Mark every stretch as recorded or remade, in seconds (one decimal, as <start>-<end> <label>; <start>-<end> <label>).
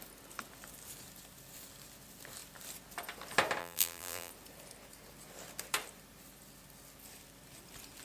0.0-3.6 recorded; 3.6-4.3 remade; 4.3-8.0 recorded